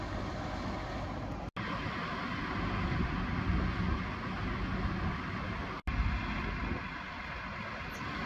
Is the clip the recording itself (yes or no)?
yes